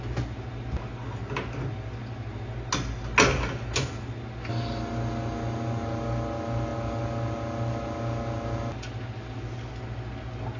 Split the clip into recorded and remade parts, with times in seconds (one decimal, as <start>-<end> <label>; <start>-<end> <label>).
0.0-10.6 recorded